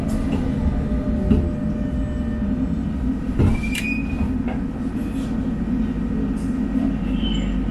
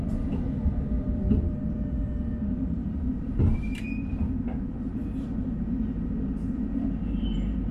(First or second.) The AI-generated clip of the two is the second